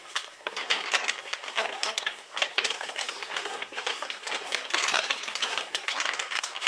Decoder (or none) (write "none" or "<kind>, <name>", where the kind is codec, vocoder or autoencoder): codec, SNAC